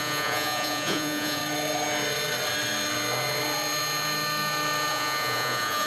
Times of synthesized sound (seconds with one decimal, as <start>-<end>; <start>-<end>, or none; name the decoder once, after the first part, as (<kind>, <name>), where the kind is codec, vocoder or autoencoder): 0.0-1.4 (vocoder, Vocos); 4.9-5.9